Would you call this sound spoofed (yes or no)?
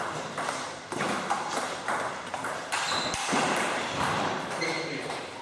yes